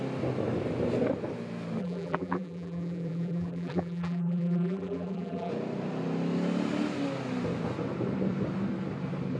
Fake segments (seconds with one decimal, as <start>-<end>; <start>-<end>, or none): 1.8-5.5